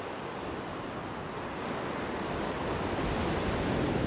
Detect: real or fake real